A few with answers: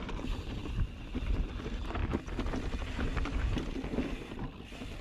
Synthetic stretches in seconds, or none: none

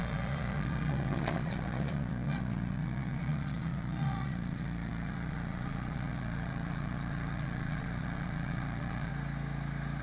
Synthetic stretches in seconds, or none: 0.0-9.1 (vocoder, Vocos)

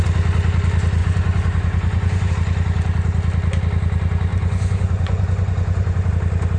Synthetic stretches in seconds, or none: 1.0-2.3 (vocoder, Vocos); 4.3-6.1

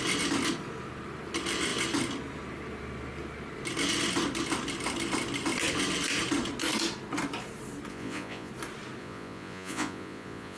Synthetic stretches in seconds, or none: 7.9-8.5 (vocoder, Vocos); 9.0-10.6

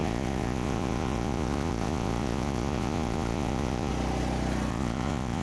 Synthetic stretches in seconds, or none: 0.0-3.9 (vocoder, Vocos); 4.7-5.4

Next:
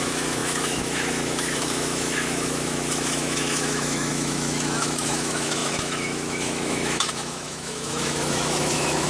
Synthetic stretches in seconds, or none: 0.0-9.1 (autoencoder, DAC-VAE)

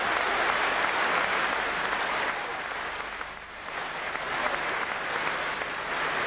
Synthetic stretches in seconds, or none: none